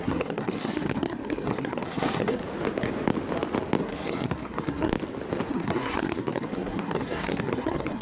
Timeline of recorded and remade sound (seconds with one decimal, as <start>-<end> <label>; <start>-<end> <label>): 0.0-2.4 remade; 2.4-3.8 recorded; 3.8-4.9 remade; 4.9-5.5 recorded; 5.5-8.0 remade